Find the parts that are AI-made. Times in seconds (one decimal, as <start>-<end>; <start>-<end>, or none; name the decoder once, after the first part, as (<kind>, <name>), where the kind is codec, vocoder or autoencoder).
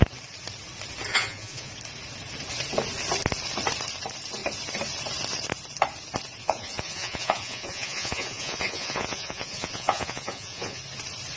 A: 1.1-1.7 (vocoder, Vocos); 6.4-10.8